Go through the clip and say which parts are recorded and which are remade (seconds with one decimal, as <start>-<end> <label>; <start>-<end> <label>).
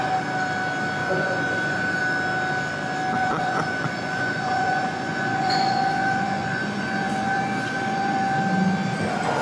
0.0-1.0 recorded; 1.0-2.0 remade; 2.0-3.2 recorded; 3.2-8.4 remade; 8.4-9.4 recorded